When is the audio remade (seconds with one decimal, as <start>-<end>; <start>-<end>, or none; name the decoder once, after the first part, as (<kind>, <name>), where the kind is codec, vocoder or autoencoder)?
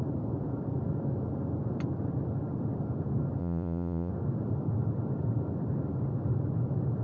3.4-4.1 (vocoder, Vocos)